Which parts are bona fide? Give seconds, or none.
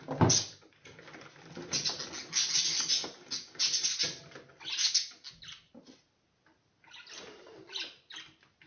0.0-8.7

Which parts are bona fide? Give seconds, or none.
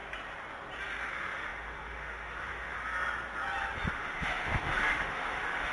0.0-1.1; 2.8-3.9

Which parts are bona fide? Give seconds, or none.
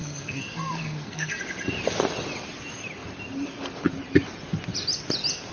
1.4-5.5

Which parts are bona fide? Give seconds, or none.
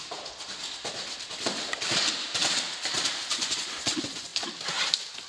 0.0-3.2; 4.3-5.3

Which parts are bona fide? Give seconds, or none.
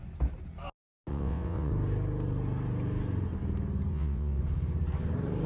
0.0-1.1; 1.7-3.9; 4.4-5.5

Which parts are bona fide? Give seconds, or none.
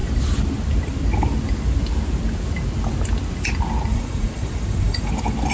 0.0-3.9; 5.1-5.5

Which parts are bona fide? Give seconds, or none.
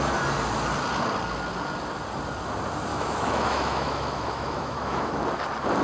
0.0-2.9; 5.2-5.8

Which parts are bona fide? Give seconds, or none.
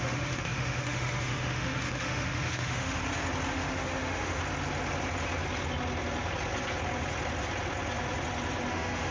3.0-3.5; 4.4-8.7